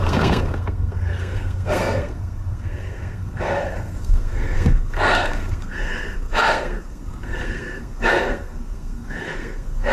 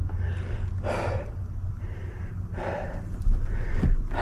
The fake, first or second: first